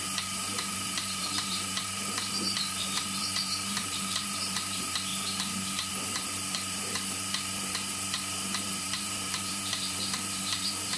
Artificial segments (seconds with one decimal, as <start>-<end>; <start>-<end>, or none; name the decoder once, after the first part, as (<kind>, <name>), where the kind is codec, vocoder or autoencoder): 0.0-11.0 (vocoder, BigVGAN v2)